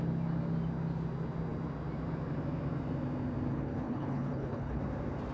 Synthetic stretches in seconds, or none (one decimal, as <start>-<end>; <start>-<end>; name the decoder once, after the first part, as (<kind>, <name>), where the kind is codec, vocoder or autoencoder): 3.5-4.8 (codec, HILCodec)